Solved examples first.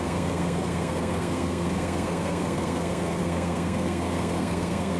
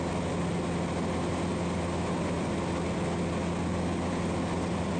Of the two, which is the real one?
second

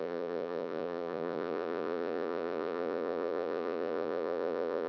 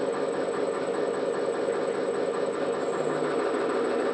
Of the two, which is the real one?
second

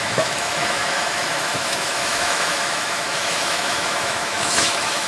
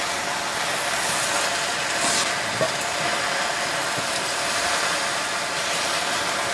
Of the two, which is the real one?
second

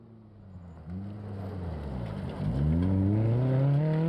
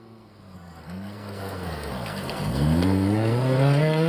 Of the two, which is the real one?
first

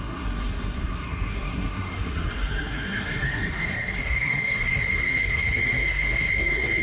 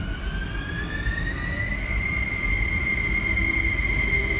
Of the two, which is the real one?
second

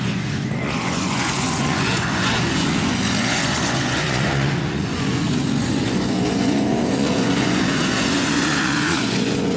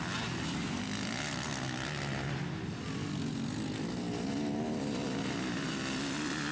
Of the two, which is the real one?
second